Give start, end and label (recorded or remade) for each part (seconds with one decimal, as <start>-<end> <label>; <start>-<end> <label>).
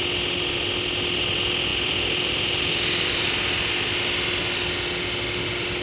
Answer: 0.0-1.7 recorded; 1.7-3.7 remade; 3.7-5.8 recorded